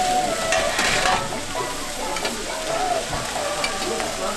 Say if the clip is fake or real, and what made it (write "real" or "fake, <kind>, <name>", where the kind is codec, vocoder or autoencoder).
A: real